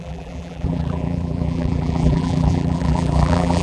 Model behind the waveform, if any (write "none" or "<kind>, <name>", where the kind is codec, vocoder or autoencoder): vocoder, BigVGAN v2